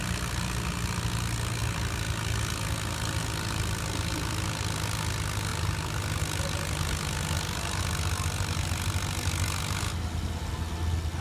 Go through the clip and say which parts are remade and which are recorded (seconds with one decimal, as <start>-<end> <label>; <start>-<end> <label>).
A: 0.0-11.2 recorded